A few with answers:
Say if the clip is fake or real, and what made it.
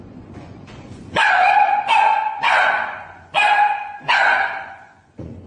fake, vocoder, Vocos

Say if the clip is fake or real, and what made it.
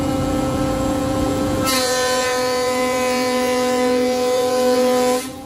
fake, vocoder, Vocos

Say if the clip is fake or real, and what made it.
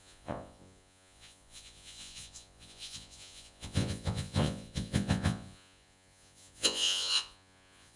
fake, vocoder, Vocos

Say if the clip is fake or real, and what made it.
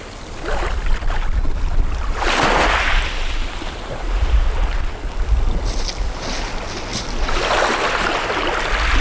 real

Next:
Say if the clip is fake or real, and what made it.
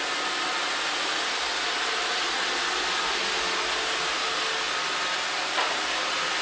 real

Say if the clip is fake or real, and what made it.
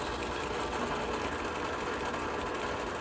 real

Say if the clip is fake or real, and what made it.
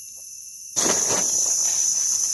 real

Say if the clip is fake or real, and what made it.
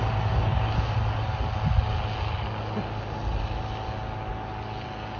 real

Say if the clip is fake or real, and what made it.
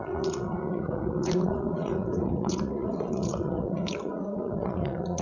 fake, vocoder, Vocos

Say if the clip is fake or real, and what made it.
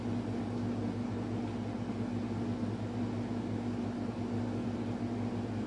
real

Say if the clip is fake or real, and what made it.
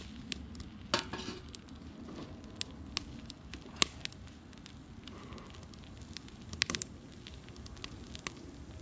real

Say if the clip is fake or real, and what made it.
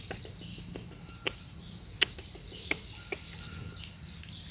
real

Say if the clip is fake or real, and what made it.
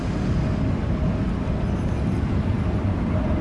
real